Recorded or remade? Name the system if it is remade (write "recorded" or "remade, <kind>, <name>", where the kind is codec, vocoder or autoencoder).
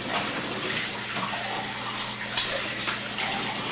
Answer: recorded